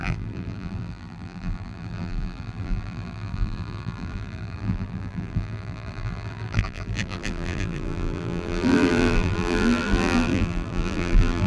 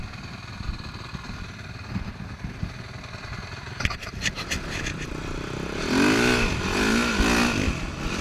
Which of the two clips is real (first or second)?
second